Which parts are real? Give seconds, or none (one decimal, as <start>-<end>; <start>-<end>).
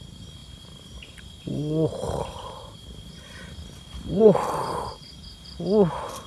0.0-6.3